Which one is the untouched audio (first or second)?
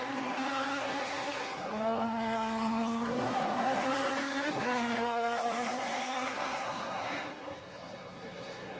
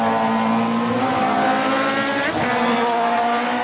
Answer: second